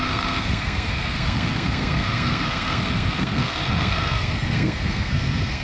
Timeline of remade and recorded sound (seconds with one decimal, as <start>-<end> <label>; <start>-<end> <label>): 0.0-5.6 remade